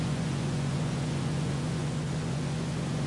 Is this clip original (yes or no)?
no